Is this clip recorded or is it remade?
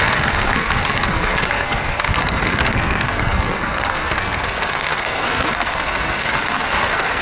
remade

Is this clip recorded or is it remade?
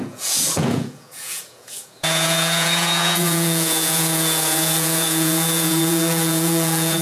remade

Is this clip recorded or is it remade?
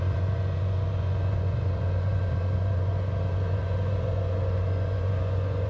remade